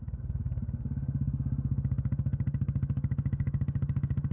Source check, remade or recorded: remade